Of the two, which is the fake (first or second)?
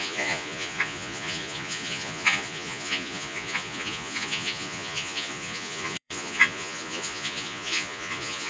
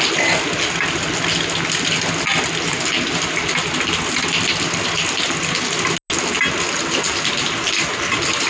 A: first